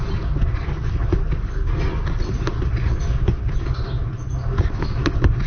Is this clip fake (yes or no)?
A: no